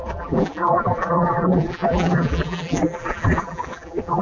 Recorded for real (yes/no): no